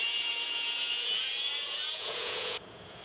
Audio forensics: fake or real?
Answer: fake